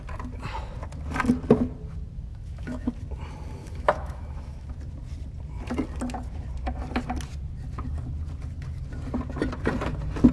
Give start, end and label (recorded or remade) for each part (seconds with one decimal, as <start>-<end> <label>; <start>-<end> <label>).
0.0-2.3 recorded; 2.3-2.9 remade; 2.9-3.6 recorded; 3.6-4.7 remade; 4.7-10.3 recorded

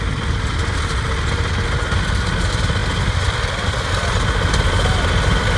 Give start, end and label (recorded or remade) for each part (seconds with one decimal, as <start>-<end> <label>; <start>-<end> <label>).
0.0-5.6 recorded

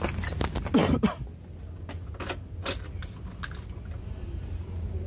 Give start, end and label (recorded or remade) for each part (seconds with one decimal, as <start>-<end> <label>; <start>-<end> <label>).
0.0-5.1 recorded

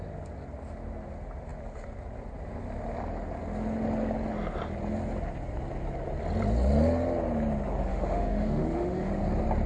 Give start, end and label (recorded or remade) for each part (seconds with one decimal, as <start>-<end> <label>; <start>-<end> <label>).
0.0-7.9 recorded; 7.9-9.1 remade; 9.1-9.7 recorded

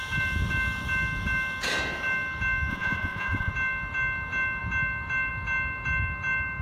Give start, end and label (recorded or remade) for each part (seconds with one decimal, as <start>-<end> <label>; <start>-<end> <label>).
0.0-2.7 recorded; 2.7-3.5 remade; 3.5-6.6 recorded